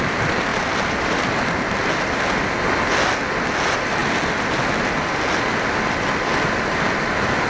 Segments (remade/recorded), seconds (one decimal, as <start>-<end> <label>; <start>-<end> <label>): 0.0-0.5 recorded; 0.5-1.3 remade; 1.3-4.0 recorded; 4.0-4.6 remade; 4.6-7.5 recorded

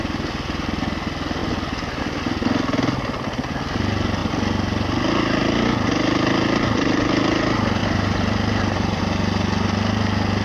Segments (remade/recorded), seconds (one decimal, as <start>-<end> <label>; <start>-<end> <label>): 0.0-7.8 recorded; 7.8-9.0 remade; 9.0-10.4 recorded

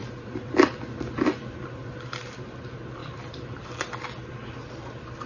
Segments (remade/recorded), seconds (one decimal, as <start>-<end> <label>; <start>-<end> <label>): 0.0-3.0 recorded; 3.0-3.6 remade; 3.6-5.3 recorded

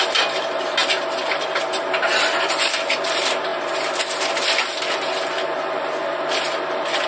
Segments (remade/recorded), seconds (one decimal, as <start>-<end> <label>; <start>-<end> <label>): 0.0-3.5 remade; 3.5-5.8 recorded; 5.8-7.1 remade

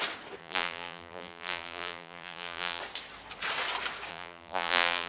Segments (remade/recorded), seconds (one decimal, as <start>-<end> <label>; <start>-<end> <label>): 0.0-0.4 recorded; 0.4-2.8 remade; 2.8-4.1 recorded; 4.1-5.1 remade

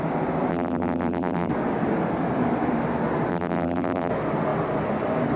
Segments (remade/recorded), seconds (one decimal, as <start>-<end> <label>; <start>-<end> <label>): 0.0-0.5 recorded; 0.5-1.5 remade; 1.5-3.3 recorded; 3.3-4.1 remade; 4.1-5.4 recorded

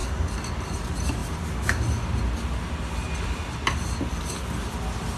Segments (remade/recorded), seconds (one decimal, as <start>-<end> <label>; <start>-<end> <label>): 0.0-5.2 recorded